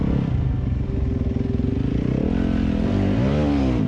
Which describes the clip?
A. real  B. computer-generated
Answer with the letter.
A